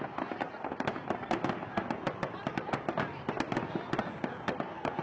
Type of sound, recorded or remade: recorded